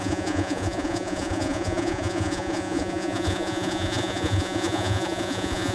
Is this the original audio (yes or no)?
no